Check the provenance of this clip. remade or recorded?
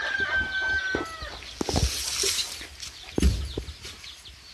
recorded